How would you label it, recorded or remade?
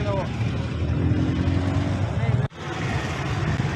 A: recorded